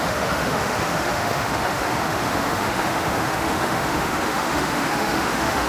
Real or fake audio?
fake